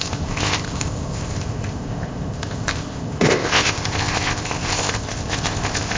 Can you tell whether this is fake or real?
fake